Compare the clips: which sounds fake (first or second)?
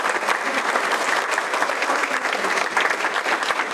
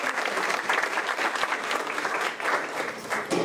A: second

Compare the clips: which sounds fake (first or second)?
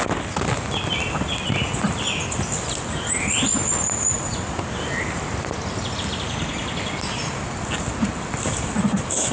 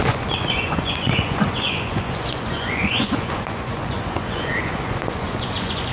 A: second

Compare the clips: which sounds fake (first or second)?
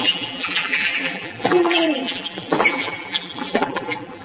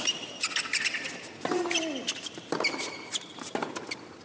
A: first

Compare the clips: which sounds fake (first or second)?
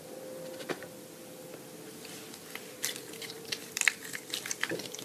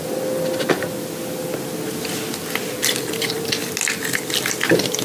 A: first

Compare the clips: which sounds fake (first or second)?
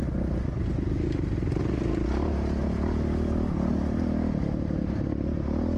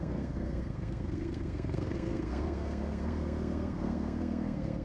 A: second